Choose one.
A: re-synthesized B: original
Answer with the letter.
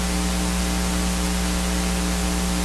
B